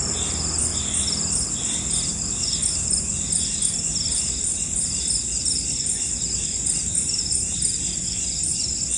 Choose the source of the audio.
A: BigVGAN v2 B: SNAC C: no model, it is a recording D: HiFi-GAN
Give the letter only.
C